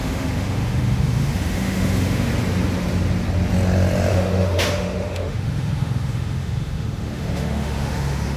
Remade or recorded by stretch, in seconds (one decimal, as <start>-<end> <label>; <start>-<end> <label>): 0.0-2.3 remade; 2.3-4.1 recorded; 4.1-8.4 remade